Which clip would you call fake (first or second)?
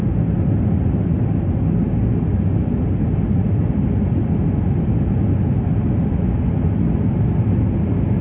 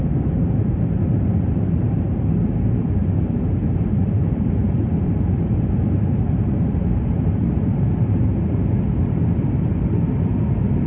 second